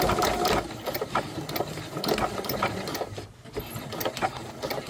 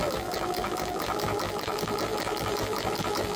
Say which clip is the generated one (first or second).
second